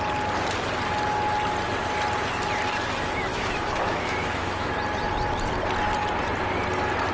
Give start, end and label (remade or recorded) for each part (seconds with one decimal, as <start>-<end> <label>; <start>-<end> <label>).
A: 0.0-3.3 recorded; 3.3-4.7 remade; 4.7-7.1 recorded